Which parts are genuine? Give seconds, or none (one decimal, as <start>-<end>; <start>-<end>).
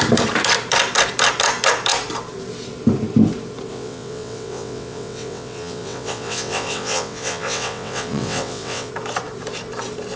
0.0-3.7; 8.9-10.2